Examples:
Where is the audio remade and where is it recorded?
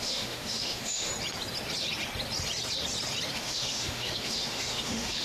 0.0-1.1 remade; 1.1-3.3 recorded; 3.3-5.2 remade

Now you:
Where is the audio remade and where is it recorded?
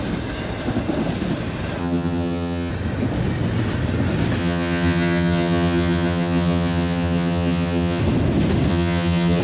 0.0-1.8 recorded; 1.8-2.7 remade; 2.7-4.4 recorded; 4.4-8.0 remade; 8.0-8.7 recorded; 8.7-9.4 remade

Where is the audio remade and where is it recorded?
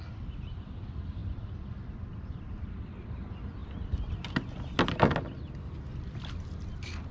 0.0-7.1 recorded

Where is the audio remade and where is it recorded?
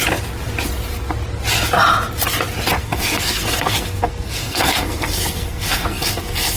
0.0-2.8 recorded; 2.8-6.6 remade